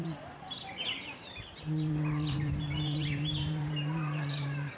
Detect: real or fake fake